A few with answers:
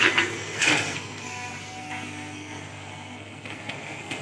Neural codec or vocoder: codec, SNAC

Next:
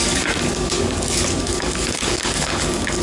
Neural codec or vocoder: codec, DAC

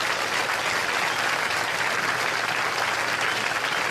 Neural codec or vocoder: none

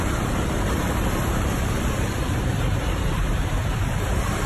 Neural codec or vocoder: vocoder, BigVGAN v2